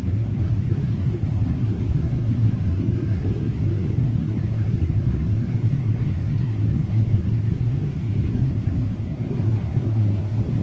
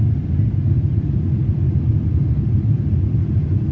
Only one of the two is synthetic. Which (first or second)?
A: first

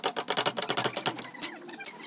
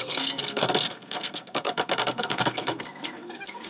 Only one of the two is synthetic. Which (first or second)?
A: second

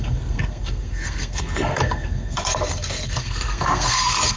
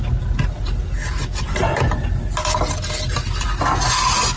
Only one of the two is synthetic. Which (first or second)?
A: first